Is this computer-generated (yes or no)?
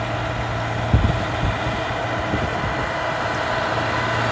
no